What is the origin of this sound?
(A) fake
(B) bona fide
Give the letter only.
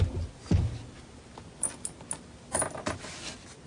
B